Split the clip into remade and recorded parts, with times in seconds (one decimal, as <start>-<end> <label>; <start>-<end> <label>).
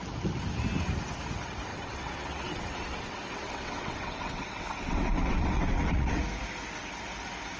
0.0-1.7 recorded; 1.7-6.2 remade; 6.2-7.6 recorded